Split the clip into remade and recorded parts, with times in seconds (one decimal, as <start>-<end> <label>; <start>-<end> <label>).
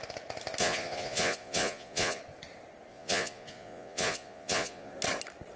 0.0-0.6 recorded; 0.6-2.2 remade; 2.2-2.9 recorded; 2.9-4.9 remade; 4.9-5.6 recorded